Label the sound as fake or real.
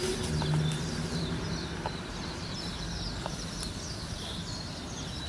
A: fake